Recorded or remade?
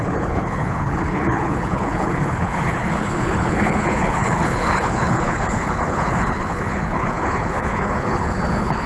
remade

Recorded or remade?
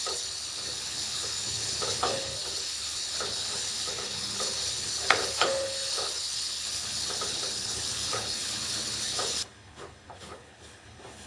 remade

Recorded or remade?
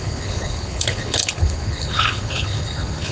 remade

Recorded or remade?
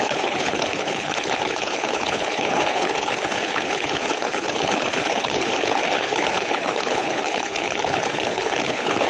remade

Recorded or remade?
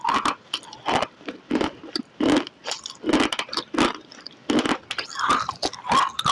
recorded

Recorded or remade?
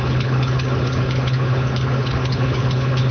remade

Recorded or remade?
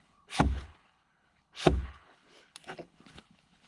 remade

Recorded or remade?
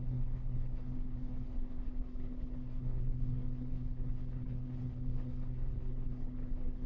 remade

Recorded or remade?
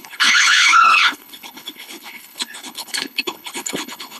remade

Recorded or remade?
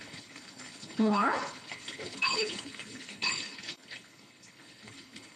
remade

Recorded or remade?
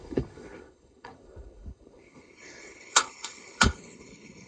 remade